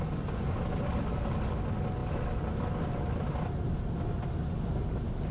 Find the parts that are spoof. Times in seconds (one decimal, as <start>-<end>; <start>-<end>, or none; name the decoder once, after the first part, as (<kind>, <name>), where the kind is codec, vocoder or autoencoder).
none